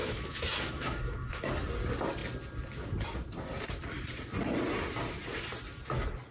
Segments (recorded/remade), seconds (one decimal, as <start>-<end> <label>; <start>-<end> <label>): 0.0-1.5 remade; 1.5-6.3 recorded

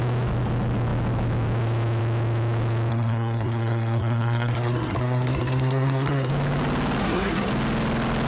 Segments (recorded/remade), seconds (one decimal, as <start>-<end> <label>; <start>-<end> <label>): 0.0-2.9 recorded; 2.9-6.3 remade; 6.3-7.0 recorded; 7.0-7.5 remade; 7.5-8.3 recorded

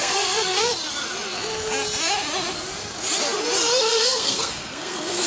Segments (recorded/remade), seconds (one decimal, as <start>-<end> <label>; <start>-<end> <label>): 0.0-0.7 remade; 0.7-3.9 recorded; 3.9-5.3 remade

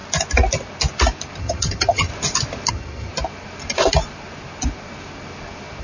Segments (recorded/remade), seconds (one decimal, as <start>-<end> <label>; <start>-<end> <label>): 0.0-1.4 recorded; 1.4-2.1 remade; 2.1-2.7 recorded; 2.7-3.1 remade; 3.1-5.8 recorded

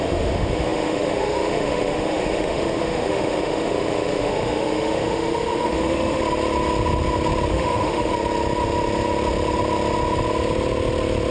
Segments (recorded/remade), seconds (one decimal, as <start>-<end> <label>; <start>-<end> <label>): 0.0-6.2 remade; 6.2-7.5 recorded; 7.5-8.1 remade; 8.1-11.3 recorded

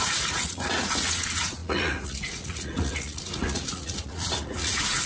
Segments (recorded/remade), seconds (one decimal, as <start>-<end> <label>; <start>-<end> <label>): 0.0-5.1 remade

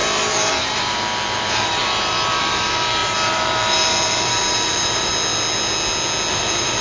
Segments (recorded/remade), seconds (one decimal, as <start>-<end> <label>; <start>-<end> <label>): 0.0-5.1 remade; 5.1-6.3 recorded; 6.3-6.8 remade

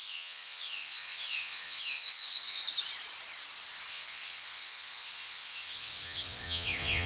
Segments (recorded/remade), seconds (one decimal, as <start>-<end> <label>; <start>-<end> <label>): 0.0-2.6 remade; 2.6-3.9 recorded; 3.9-7.1 remade